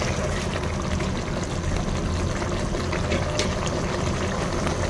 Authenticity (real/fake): real